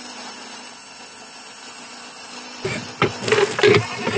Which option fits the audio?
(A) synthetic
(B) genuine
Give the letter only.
B